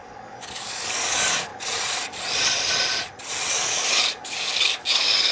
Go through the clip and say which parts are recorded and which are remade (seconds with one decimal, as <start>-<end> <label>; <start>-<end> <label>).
0.0-1.5 remade; 1.5-3.5 recorded; 3.5-5.3 remade